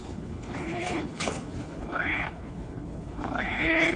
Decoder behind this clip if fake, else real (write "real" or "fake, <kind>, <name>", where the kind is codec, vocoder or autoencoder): fake, codec, HILCodec